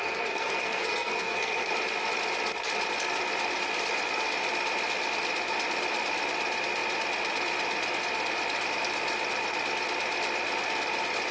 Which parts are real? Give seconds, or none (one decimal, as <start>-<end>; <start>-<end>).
1.7-11.3